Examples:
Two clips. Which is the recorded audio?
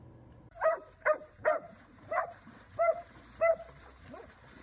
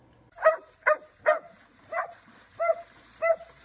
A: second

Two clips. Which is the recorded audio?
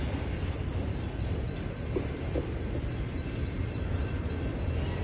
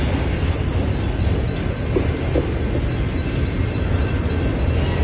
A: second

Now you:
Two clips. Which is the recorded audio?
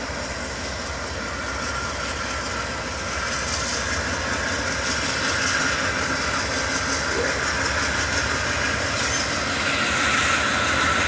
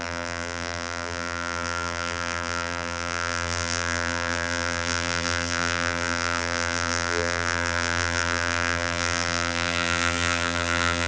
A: first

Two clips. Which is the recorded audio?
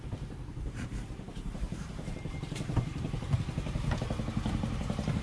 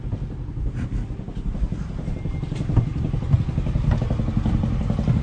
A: second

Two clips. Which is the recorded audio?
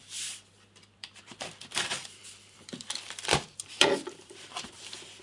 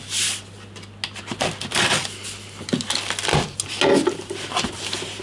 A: second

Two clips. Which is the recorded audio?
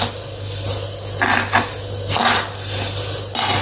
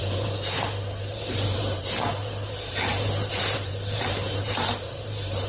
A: first